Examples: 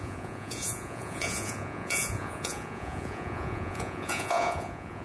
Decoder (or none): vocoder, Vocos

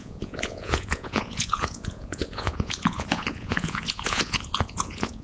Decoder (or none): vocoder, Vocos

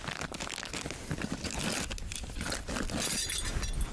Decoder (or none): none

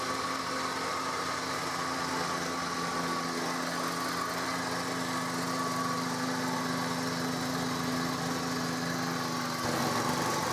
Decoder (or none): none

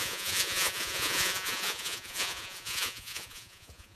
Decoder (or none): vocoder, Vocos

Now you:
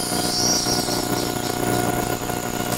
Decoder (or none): none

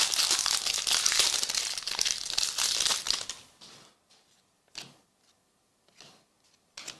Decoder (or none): none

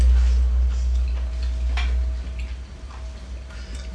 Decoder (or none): none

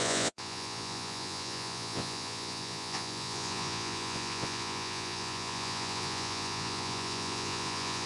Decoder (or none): vocoder, Vocos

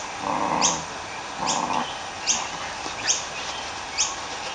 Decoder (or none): none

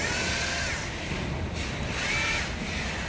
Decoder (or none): none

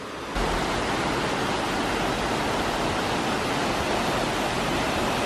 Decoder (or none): none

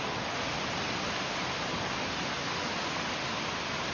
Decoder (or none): none